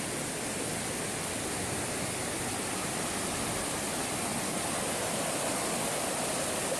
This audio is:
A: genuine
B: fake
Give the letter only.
A